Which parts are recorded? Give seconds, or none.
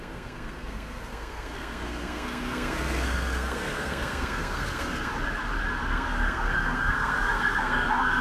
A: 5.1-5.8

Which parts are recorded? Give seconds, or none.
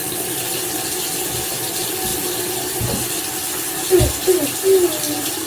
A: 0.0-5.5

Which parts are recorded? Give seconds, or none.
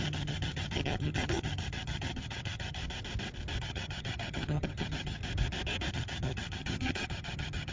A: 2.8-3.6; 5.2-5.9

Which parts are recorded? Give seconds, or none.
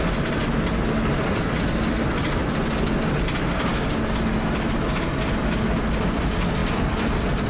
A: 0.0-6.6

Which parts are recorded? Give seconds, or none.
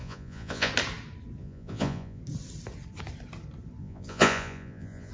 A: 0.7-1.4; 2.2-3.8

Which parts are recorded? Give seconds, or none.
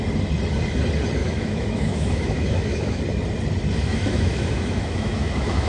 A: 0.0-1.2; 3.0-3.9